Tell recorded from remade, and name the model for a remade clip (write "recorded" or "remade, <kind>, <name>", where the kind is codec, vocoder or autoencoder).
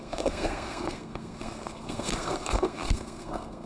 remade, codec, SNAC